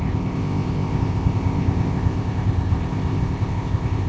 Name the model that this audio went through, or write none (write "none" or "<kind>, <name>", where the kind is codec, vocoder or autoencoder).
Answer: codec, ZipCodec